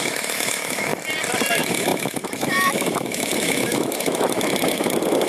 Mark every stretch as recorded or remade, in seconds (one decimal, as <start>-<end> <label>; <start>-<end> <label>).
0.0-0.9 remade; 0.9-1.5 recorded; 1.5-5.3 remade